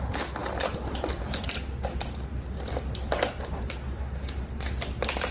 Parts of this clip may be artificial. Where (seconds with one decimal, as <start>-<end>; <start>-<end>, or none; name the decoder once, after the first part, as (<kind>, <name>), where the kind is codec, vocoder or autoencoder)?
none